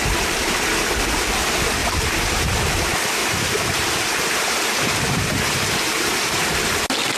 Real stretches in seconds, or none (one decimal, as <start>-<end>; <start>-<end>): 0.0-1.8; 2.7-3.2; 6.7-7.2